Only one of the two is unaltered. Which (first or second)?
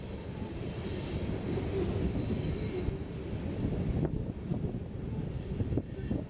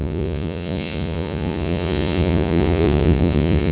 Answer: first